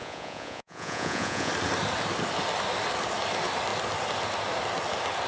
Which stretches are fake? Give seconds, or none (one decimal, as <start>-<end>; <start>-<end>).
0.0-1.5